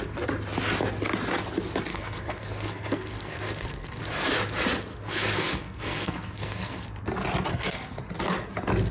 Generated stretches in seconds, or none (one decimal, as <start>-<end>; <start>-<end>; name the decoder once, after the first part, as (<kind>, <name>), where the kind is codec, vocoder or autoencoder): 1.9-4.0 (codec, SNAC); 4.9-7.0; 7.5-8.0